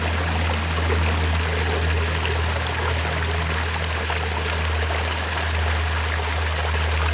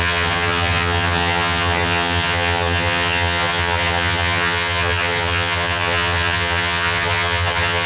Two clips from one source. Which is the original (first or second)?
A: first